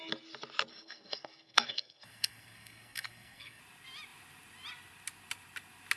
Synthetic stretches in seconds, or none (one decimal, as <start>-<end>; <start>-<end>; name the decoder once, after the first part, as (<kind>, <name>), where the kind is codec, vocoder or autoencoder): 0.7-3.6 (codec, SNAC)

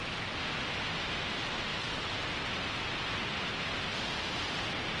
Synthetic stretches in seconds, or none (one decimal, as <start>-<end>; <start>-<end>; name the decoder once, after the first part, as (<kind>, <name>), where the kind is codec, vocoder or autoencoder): 1.7-2.2 (vocoder, BigVGAN v2); 3.9-4.5

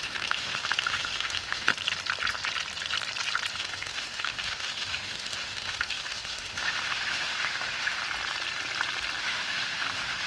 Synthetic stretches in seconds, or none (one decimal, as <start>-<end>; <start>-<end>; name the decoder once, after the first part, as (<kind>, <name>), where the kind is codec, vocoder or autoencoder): 0.0-1.7 (autoencoder, DAC-VAE); 3.5-8.0; 9.2-10.3